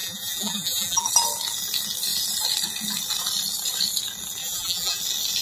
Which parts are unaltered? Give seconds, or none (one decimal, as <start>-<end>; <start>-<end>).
1.1-4.4; 5.0-5.4